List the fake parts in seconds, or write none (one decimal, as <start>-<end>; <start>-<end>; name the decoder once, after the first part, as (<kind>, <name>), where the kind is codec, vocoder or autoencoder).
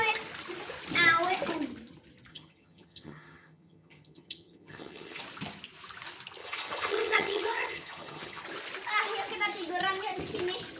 2.3-5.2 (vocoder, HiFi-GAN); 6.4-8.4